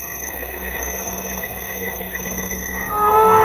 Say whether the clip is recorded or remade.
remade